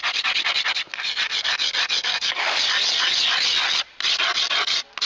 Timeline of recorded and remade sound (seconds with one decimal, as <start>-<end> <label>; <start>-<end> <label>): 0.0-2.1 recorded; 2.1-2.6 remade; 2.6-5.0 recorded